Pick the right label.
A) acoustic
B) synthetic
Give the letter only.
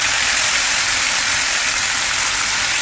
A